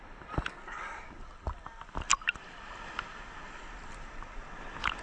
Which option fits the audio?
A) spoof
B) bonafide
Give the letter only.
B